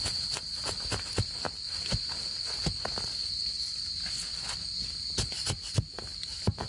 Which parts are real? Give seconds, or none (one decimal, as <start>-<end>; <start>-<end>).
0.0-6.7